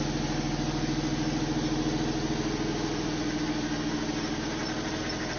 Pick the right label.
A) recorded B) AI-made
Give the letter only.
A